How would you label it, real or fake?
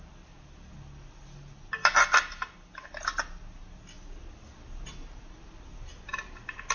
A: real